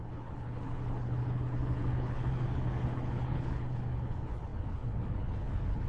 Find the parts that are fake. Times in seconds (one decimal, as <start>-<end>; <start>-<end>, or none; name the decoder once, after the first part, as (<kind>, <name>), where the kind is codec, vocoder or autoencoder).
0.0-5.9 (codec, HILCodec)